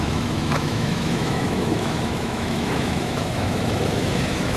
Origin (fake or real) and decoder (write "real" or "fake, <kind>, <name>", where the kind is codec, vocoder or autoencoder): fake, autoencoder, DAC-VAE